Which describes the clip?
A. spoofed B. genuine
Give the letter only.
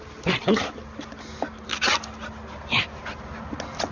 B